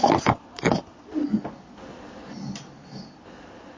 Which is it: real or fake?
real